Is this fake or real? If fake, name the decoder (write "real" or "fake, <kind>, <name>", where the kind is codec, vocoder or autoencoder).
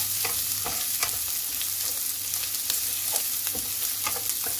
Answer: real